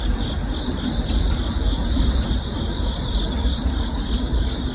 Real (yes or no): yes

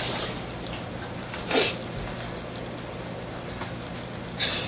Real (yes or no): yes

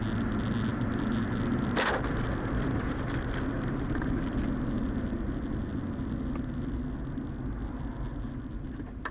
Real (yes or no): yes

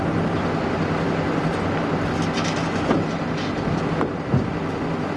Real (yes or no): yes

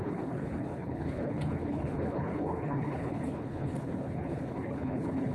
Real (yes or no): no